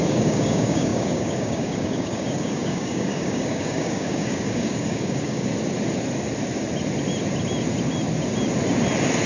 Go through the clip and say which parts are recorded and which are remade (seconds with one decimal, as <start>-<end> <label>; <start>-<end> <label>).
0.0-5.5 remade; 5.5-9.3 recorded